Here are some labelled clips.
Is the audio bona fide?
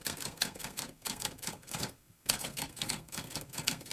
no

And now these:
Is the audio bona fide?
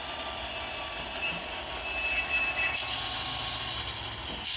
yes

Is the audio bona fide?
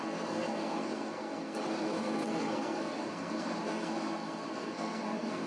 no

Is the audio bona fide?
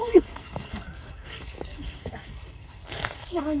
no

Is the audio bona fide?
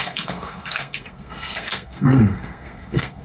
no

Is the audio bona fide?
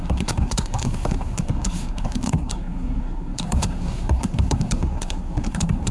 no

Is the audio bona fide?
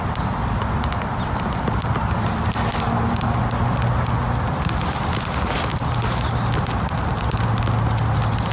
yes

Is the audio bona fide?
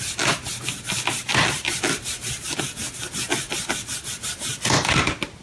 yes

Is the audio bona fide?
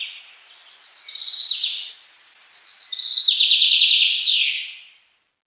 yes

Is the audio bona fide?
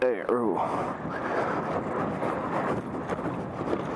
yes